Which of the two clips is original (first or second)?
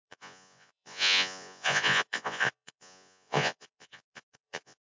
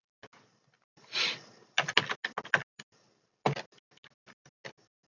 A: second